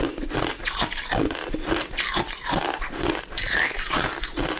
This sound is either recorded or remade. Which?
recorded